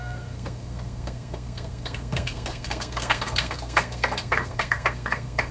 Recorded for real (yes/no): no